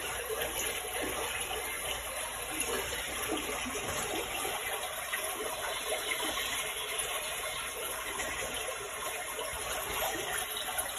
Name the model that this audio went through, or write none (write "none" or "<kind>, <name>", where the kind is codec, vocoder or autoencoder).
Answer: vocoder, BigVGAN v2